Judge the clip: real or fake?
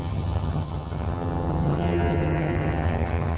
fake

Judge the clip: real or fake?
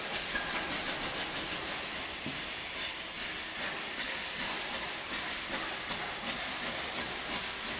real